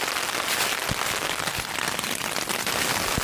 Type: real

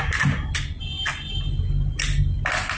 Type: real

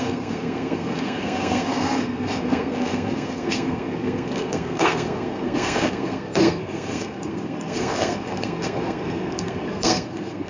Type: fake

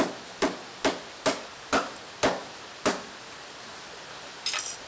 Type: real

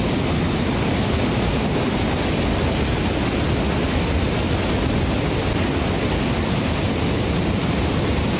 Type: real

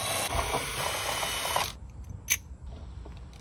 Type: real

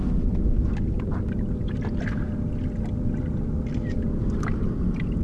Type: real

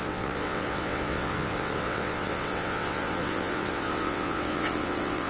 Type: fake